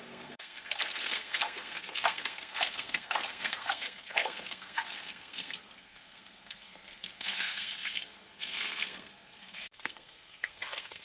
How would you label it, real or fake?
fake